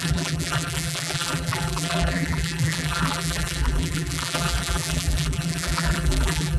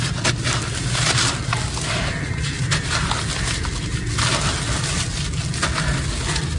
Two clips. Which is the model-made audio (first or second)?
first